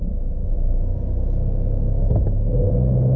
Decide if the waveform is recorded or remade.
recorded